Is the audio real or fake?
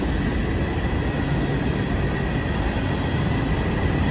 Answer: real